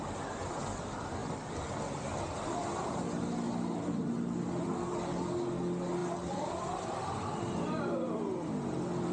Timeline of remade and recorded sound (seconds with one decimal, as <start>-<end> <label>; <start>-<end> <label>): 0.0-6.0 recorded; 6.0-6.5 remade; 6.5-9.1 recorded